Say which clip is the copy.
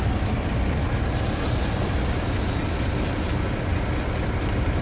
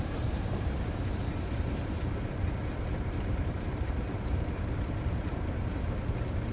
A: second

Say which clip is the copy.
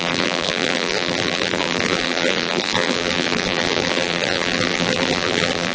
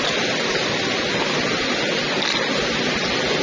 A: first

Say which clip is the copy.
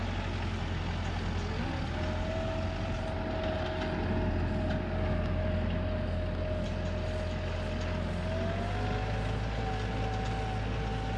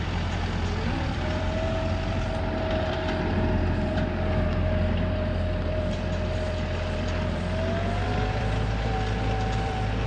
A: second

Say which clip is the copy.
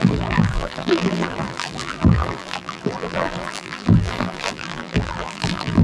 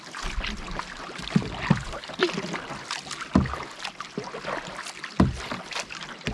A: first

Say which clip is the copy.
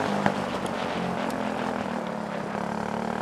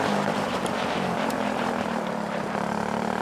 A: second